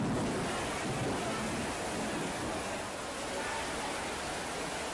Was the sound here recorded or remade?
recorded